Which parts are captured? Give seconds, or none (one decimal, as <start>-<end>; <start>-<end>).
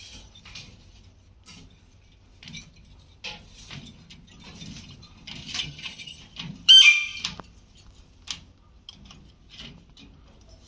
0.0-5.6; 6.2-10.7